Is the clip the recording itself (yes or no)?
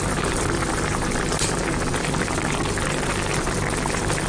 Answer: yes